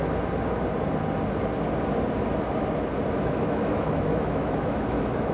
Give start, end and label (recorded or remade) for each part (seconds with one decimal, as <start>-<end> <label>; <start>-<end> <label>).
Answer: 0.0-3.2 recorded; 3.2-5.3 remade